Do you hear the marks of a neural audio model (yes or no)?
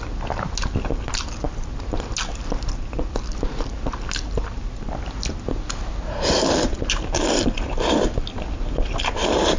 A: no